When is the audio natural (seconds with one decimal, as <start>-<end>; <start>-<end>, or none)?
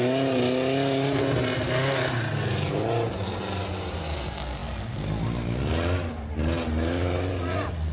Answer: 0.0-7.9